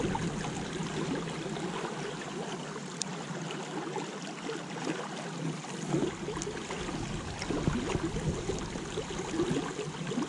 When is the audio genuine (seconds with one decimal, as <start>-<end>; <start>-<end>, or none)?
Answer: 0.0-10.3